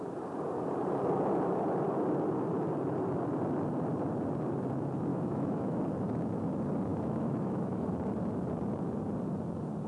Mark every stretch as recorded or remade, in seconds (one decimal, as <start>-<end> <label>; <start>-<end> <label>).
0.0-5.1 recorded; 5.1-5.8 remade; 5.8-6.9 recorded; 6.9-7.9 remade; 7.9-9.9 recorded